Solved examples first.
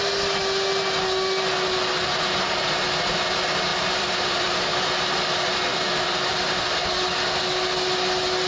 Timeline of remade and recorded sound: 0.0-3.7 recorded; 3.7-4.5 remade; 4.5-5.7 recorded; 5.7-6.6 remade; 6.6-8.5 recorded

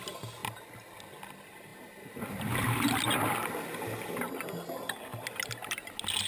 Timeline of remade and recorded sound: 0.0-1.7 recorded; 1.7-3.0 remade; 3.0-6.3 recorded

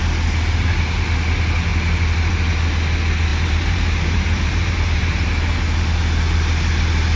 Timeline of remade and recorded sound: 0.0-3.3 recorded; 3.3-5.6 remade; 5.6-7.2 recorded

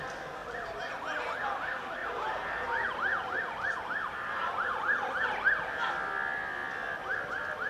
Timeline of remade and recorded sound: 0.0-2.0 recorded; 2.0-4.8 remade; 4.8-7.7 recorded

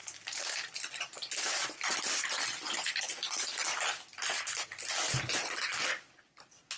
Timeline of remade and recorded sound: 0.0-0.7 remade; 0.7-6.8 recorded

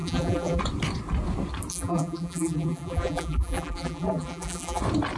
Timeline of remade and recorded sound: 0.0-0.6 remade; 0.6-1.7 recorded; 1.7-4.8 remade; 4.8-5.2 recorded